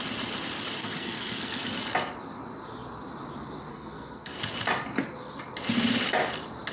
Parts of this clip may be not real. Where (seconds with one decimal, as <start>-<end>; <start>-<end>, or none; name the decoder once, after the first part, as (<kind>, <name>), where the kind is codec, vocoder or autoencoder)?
0.8-1.7 (codec, SNAC); 3.7-4.4